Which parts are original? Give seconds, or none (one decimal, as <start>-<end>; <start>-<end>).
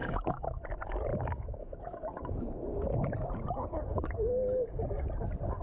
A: 0.6-1.1; 2.5-5.6